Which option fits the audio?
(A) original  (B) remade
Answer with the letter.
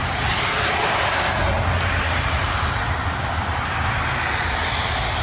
A